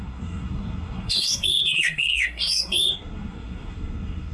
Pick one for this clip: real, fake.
fake